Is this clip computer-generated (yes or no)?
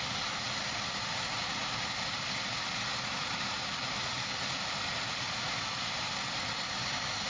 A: no